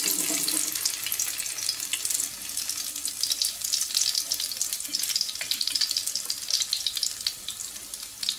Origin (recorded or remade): recorded